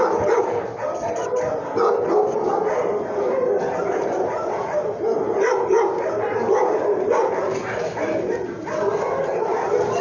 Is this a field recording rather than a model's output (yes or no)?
yes